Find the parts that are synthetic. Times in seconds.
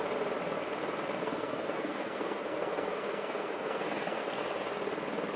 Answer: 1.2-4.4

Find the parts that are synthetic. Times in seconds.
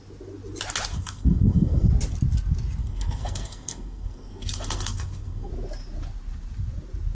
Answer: 0.9-1.9; 2.8-5.5